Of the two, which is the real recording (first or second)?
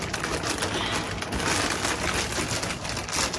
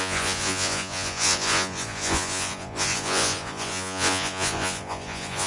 first